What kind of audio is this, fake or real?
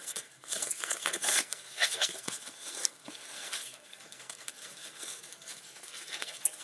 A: fake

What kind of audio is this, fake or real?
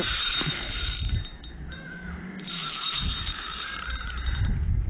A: fake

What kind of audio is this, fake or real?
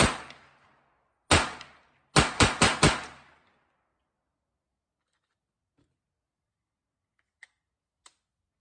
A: real